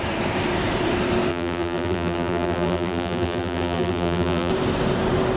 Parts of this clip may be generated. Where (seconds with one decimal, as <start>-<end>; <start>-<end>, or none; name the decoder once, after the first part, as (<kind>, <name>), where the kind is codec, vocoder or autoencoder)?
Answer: 1.3-4.5 (vocoder, BigVGAN v2)